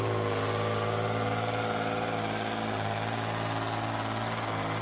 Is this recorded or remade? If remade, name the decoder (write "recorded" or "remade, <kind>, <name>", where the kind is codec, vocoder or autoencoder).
recorded